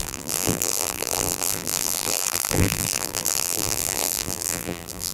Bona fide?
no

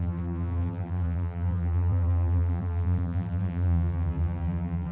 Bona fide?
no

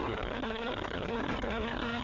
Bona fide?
no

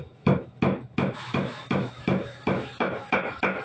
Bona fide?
no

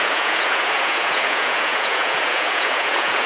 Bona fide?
no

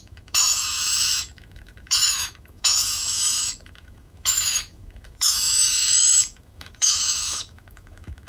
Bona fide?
no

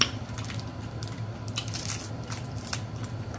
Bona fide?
no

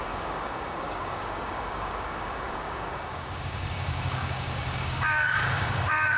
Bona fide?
no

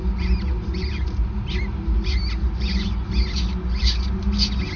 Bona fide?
yes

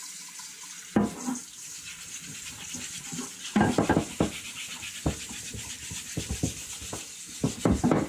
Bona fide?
yes